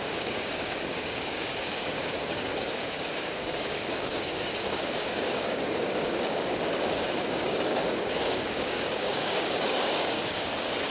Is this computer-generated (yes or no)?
yes